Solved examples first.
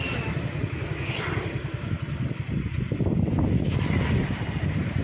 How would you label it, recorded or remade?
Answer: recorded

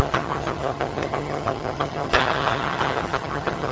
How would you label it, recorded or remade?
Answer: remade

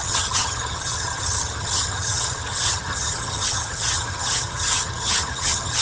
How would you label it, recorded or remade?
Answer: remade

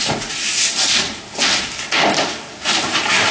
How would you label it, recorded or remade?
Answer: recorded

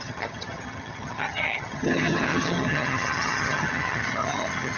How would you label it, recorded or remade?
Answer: remade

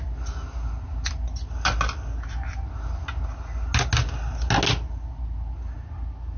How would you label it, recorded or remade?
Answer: recorded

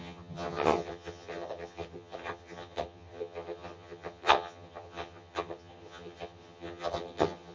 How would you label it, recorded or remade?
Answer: remade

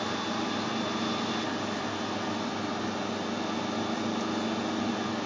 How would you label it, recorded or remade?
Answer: recorded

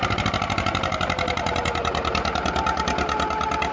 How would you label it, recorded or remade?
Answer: recorded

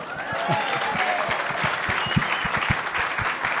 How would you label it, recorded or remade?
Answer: recorded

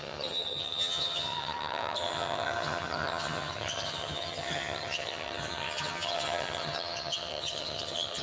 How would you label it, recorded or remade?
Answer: remade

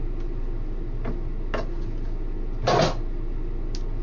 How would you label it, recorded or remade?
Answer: recorded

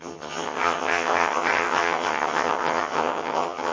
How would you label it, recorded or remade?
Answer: remade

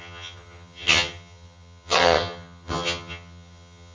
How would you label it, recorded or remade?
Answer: remade